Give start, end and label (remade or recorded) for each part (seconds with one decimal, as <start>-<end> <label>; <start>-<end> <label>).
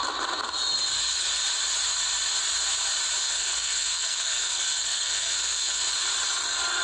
0.0-3.2 recorded; 3.2-5.8 remade; 5.8-6.8 recorded